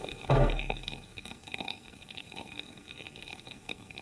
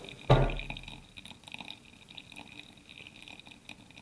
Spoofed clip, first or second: first